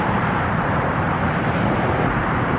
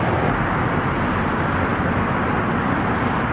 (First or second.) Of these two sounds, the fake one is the first